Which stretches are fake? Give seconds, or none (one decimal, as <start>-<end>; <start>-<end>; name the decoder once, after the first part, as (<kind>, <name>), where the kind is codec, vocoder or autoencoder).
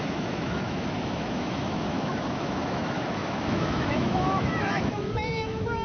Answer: 0.0-5.8 (autoencoder, DAC-VAE)